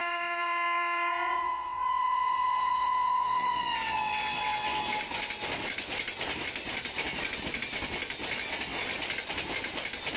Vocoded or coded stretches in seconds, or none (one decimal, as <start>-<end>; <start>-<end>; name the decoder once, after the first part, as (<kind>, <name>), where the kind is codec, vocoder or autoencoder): 0.0-4.8 (vocoder, WaveNeXt)